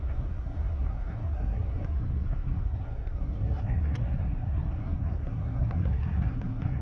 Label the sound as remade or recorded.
remade